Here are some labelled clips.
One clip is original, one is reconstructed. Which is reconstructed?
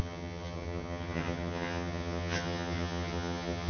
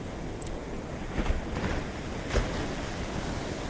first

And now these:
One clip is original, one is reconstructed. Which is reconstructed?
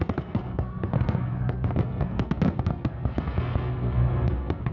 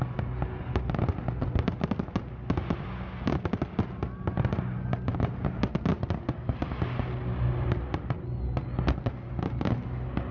first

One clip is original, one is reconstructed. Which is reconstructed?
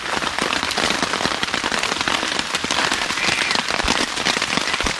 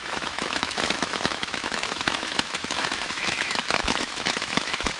second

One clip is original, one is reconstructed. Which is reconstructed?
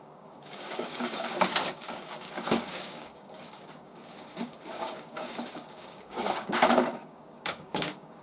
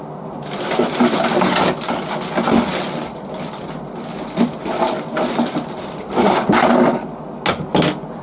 first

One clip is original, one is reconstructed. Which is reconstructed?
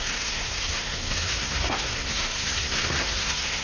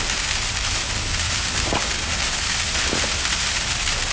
first